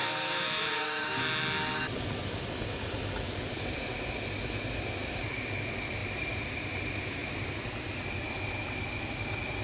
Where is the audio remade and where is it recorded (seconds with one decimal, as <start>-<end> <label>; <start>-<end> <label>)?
0.0-1.2 remade; 1.2-6.0 recorded; 6.0-6.8 remade; 6.8-9.6 recorded